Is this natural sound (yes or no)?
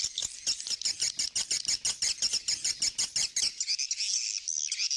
yes